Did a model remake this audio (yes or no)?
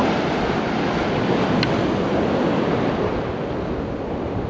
no